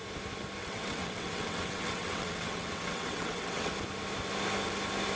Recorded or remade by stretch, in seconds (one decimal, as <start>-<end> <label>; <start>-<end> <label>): 0.0-0.6 recorded; 0.6-3.7 remade; 3.7-5.2 recorded